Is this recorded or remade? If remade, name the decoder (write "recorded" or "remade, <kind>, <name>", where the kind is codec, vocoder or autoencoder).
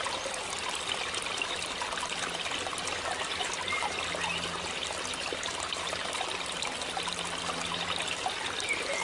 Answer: recorded